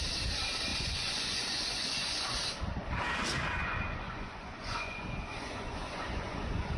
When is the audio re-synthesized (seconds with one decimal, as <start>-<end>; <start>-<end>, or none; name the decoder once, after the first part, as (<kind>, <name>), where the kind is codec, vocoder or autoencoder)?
0.7-2.4 (vocoder, Vocos); 3.5-6.8